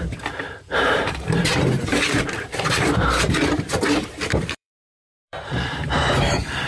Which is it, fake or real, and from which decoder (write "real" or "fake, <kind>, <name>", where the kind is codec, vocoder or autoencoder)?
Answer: fake, vocoder, BigVGAN v2